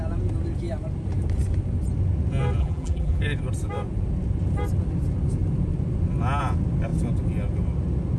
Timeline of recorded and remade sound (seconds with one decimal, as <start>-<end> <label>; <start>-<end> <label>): 0.0-2.6 recorded; 2.6-3.2 remade; 3.2-8.2 recorded